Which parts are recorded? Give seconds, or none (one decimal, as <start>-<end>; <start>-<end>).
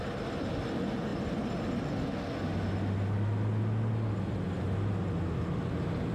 0.0-6.1